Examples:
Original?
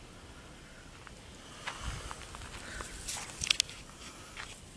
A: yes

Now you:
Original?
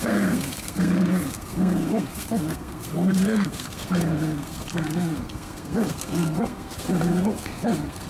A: no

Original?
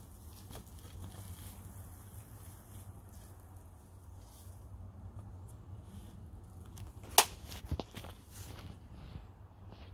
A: yes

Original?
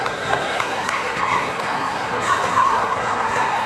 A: no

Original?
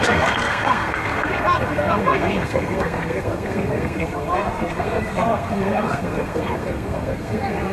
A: no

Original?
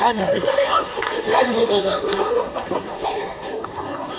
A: no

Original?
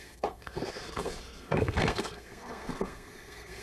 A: no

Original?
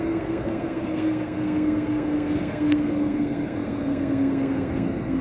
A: no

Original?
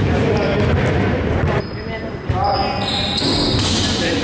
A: yes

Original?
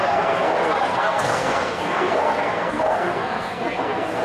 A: no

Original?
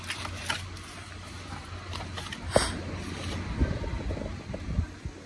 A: yes